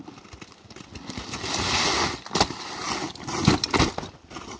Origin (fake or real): real